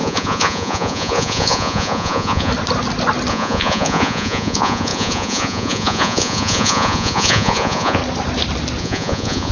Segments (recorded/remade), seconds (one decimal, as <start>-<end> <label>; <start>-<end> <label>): 0.0-2.5 remade; 2.5-3.3 recorded; 3.3-8.0 remade; 8.0-8.8 recorded; 8.8-9.5 remade